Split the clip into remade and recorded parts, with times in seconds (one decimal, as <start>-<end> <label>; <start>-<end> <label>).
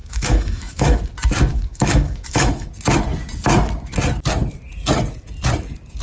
0.0-1.0 remade; 1.0-1.5 recorded; 1.5-2.7 remade; 2.7-6.0 recorded